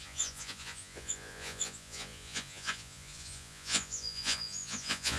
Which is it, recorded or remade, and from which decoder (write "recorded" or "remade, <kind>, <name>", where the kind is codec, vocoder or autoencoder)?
remade, vocoder, Vocos